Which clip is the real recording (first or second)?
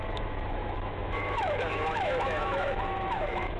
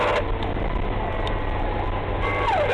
second